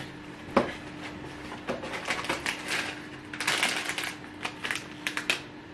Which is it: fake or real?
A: real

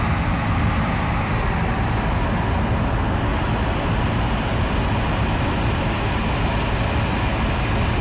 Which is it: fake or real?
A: real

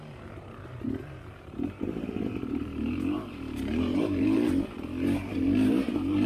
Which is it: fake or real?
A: fake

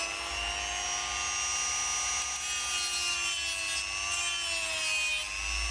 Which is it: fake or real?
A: real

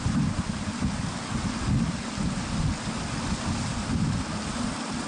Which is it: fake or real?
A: real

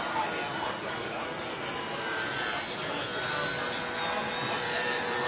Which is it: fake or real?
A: real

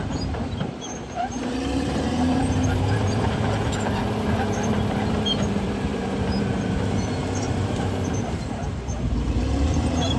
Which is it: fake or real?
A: fake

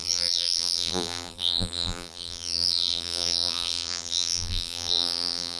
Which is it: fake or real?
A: fake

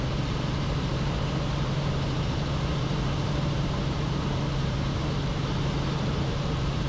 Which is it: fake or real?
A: fake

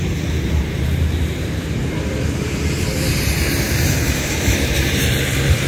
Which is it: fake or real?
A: fake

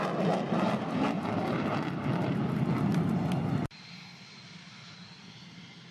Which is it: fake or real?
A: real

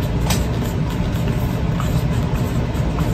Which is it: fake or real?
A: real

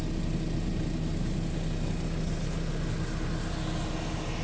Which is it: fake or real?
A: real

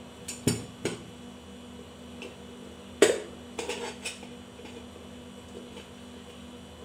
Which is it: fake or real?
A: real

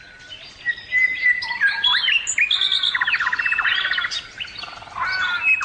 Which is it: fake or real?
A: real